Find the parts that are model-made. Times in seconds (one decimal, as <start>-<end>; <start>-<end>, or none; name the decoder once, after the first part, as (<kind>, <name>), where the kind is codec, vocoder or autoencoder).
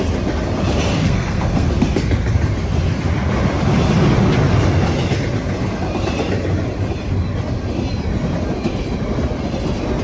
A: 0.9-1.7 (codec, SNAC)